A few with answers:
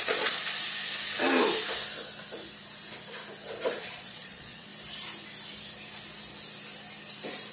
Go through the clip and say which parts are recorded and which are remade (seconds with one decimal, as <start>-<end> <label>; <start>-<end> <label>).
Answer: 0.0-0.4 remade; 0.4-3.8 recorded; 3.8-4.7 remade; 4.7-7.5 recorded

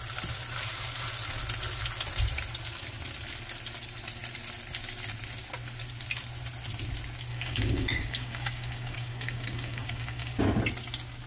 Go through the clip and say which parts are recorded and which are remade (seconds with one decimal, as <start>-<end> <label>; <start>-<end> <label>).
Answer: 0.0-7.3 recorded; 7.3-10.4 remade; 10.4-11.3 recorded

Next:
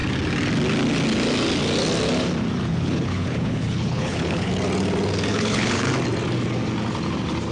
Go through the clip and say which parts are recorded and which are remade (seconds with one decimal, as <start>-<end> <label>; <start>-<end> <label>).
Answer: 0.0-2.7 recorded; 2.7-4.5 remade; 4.5-5.3 recorded; 5.3-5.9 remade; 5.9-7.5 recorded